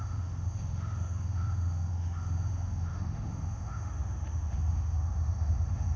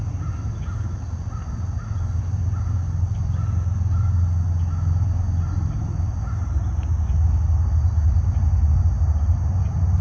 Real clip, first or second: second